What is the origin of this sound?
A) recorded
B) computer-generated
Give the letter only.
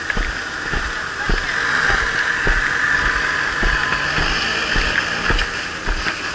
A